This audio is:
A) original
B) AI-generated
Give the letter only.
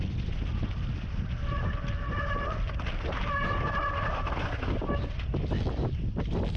A